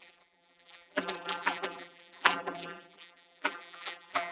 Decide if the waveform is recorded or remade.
remade